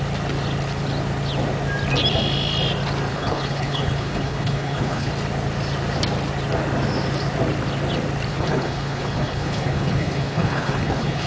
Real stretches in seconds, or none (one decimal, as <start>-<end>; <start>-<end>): 0.0-3.1; 5.1-8.3